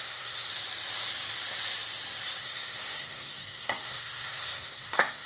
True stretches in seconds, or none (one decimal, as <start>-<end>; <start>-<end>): 0.5-2.4